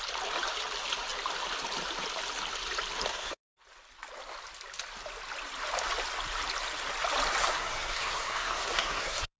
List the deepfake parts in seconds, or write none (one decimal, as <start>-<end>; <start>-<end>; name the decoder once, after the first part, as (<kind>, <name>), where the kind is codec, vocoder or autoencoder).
3.1-3.6 (codec, SNAC); 7.4-9.4